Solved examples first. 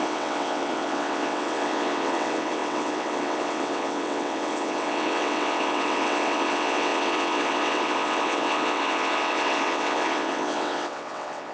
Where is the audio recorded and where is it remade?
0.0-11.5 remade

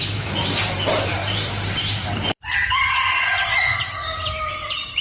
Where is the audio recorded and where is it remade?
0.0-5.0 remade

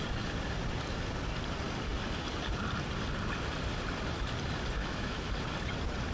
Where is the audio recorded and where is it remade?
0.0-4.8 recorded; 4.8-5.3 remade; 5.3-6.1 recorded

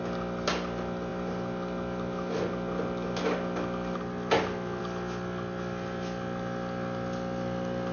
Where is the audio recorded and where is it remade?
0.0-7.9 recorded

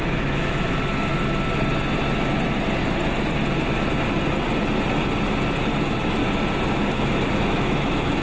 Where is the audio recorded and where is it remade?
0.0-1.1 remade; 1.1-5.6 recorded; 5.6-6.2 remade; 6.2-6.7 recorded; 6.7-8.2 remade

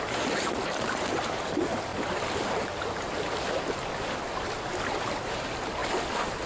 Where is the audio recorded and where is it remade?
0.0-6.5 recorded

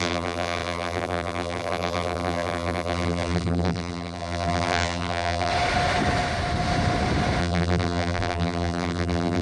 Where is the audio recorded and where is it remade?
0.0-5.5 remade; 5.5-7.4 recorded; 7.4-9.4 remade